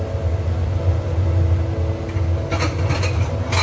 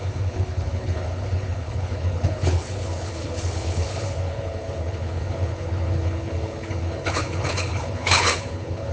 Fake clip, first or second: second